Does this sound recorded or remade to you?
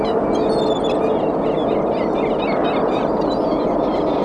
recorded